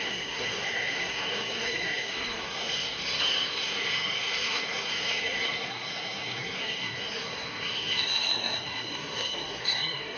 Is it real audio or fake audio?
fake